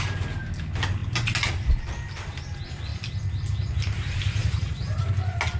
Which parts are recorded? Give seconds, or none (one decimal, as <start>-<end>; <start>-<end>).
0.0-4.4; 5.1-5.6